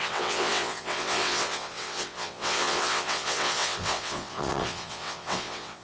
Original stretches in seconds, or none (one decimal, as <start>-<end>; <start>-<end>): none

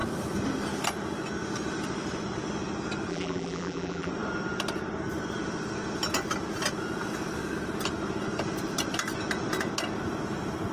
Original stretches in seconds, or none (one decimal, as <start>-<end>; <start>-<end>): 0.0-3.1; 4.1-10.7

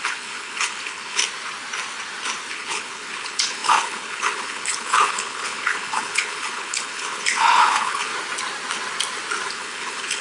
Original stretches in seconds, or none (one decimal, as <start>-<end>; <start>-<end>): 1.2-2.5; 8.1-9.5

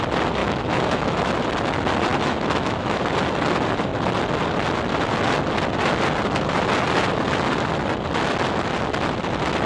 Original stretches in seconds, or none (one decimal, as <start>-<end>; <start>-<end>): 0.0-0.4; 1.3-2.1; 3.0-9.7

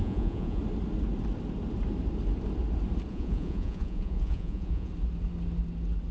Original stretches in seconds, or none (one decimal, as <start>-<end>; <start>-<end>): 0.6-3.1; 4.9-6.1

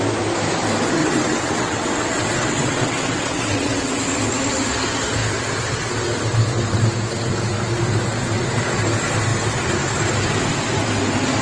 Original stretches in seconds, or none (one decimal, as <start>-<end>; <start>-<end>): 0.0-1.0; 4.0-11.4